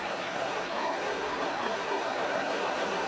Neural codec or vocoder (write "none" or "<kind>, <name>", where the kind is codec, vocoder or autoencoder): codec, SNAC